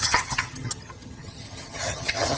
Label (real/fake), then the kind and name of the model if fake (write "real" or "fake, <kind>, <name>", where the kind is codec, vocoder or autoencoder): fake, vocoder, HiFi-GAN